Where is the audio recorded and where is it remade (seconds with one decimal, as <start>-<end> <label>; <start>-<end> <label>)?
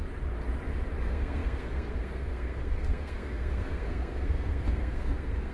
0.0-1.0 recorded; 1.0-5.5 remade